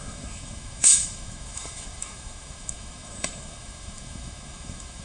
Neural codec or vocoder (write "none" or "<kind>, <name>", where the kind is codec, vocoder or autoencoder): autoencoder, DAC-VAE